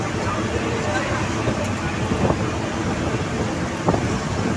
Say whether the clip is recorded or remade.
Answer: recorded